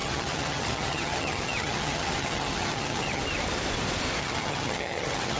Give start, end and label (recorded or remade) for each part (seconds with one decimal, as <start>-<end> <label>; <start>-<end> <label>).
0.0-3.2 remade; 3.2-4.2 recorded; 4.2-5.4 remade